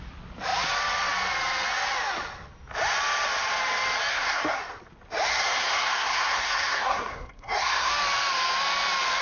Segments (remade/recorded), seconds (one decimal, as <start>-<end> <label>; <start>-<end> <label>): 0.0-4.1 recorded; 4.1-4.6 remade; 4.6-5.3 recorded; 5.3-7.9 remade; 7.9-9.2 recorded